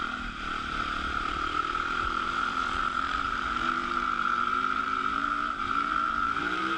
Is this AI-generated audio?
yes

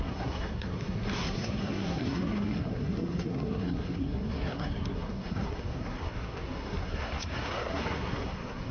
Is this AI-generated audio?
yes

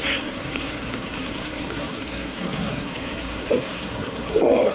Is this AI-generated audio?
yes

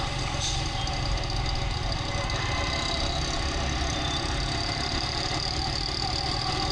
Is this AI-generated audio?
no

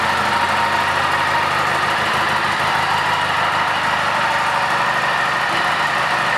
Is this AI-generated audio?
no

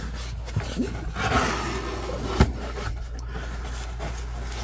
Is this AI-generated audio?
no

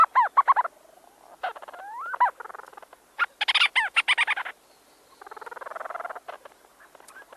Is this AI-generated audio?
no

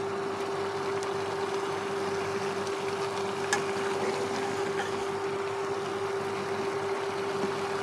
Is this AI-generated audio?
no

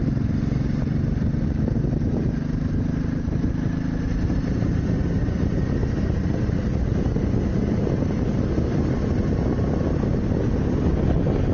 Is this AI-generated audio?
no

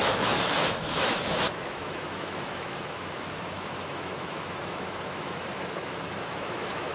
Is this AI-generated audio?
yes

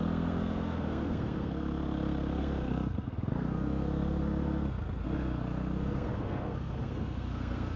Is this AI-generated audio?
yes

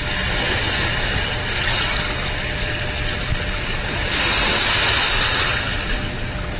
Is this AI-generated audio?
no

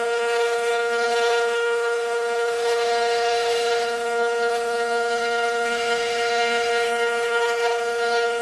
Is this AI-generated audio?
yes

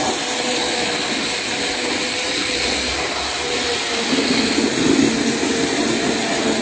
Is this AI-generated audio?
no